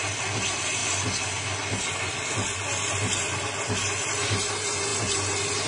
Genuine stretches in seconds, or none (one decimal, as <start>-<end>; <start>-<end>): 0.0-0.8; 4.2-4.9